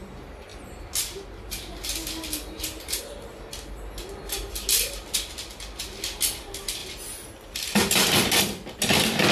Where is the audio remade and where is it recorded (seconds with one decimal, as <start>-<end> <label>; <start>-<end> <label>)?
0.0-9.3 recorded